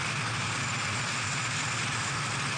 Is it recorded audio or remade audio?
recorded